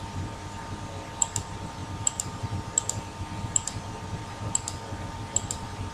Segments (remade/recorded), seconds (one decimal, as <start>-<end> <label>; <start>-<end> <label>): 0.0-5.9 recorded